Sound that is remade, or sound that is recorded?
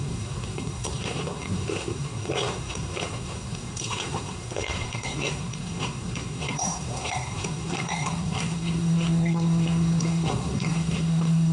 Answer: remade